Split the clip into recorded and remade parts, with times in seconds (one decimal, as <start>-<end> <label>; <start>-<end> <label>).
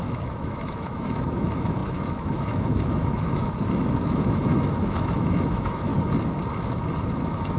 0.0-5.9 remade; 5.9-7.1 recorded; 7.1-7.6 remade